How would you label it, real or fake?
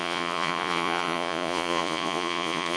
fake